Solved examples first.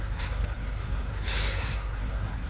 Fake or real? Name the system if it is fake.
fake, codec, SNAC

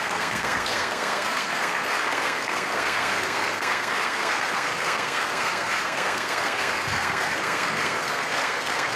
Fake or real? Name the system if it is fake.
fake, codec, SNAC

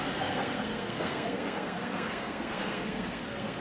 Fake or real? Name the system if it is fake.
fake, codec, SNAC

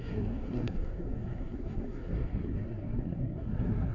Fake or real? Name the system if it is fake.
fake, codec, SNAC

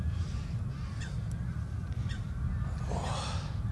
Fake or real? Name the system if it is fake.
real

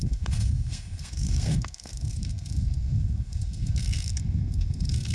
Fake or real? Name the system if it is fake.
fake, codec, SNAC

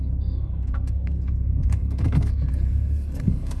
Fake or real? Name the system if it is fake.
fake, codec, SNAC